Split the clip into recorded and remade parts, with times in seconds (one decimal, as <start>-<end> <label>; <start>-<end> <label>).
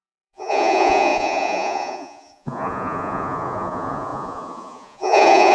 0.0-5.5 remade